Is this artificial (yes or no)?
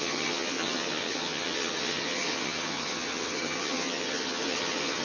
yes